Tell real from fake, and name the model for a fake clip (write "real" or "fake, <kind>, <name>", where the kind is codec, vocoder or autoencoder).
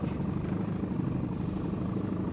real